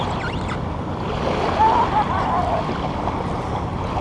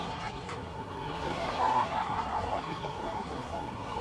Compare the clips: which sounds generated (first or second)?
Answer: second